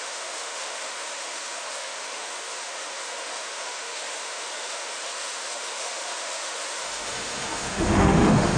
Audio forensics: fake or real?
fake